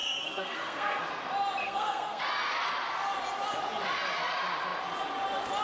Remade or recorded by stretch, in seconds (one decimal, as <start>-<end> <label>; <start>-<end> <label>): 0.0-1.0 remade; 1.0-1.6 recorded; 1.6-2.2 remade; 2.2-5.6 recorded

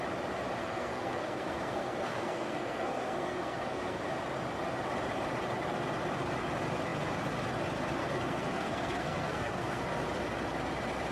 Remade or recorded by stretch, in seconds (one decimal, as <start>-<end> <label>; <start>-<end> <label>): 0.0-0.6 recorded; 0.6-4.0 remade; 4.0-8.0 recorded; 8.0-9.8 remade; 9.8-11.1 recorded